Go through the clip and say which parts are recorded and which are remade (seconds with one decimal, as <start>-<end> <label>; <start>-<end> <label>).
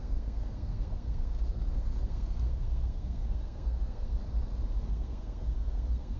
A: 0.0-4.2 remade; 4.2-4.8 recorded; 4.8-6.2 remade